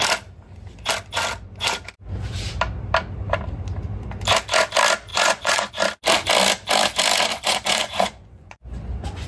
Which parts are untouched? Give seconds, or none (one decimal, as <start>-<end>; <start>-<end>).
0.0-5.1; 5.7-7.3